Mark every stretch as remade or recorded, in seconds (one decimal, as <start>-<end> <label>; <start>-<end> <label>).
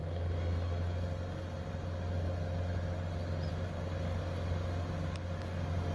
0.0-5.9 recorded